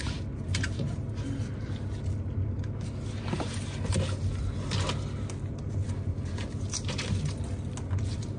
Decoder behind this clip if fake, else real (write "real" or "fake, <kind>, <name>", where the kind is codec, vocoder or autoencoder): real